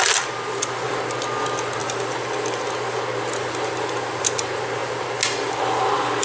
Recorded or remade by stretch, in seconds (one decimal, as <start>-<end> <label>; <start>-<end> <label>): 0.0-6.2 recorded